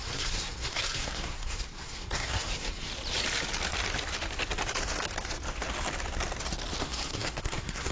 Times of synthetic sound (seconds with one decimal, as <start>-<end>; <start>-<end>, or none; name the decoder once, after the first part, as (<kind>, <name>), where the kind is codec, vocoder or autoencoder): 0.0-2.9 (codec, SNAC); 6.8-7.9